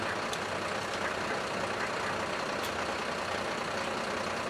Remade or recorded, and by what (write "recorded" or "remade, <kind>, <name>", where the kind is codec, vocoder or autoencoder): recorded